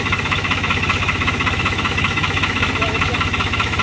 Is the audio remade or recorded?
remade